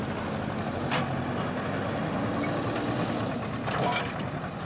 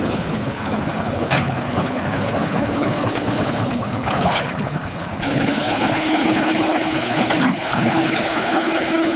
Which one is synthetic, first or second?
second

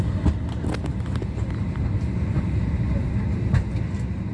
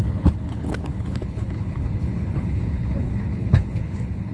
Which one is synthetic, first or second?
second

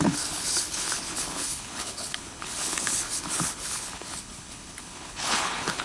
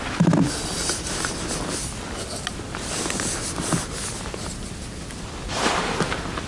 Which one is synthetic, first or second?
first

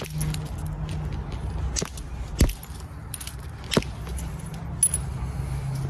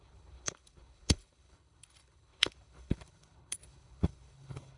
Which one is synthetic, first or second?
second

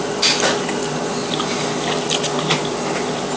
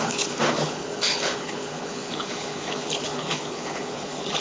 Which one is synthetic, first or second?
second